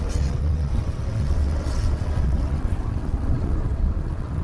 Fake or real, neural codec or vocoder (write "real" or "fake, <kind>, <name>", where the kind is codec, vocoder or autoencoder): fake, vocoder, WaveNeXt